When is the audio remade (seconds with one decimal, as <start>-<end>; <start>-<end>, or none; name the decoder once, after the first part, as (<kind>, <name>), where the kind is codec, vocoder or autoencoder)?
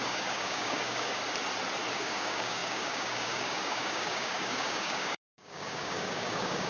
0.0-1.2 (codec, DAC); 1.9-6.7